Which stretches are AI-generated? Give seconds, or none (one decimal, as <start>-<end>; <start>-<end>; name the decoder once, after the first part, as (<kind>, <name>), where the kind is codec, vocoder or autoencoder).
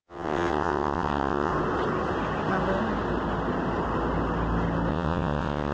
0.0-1.5 (vocoder, WaveNeXt); 4.9-5.7